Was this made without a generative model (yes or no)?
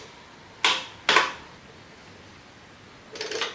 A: yes